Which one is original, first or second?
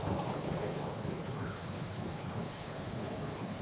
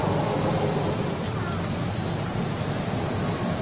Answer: second